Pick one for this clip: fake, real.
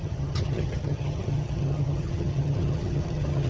fake